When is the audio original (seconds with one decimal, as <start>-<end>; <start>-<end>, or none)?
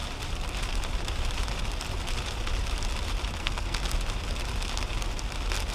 0.0-3.4; 3.8-5.7